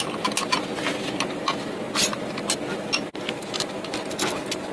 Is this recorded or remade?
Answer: recorded